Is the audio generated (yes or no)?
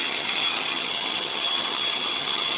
yes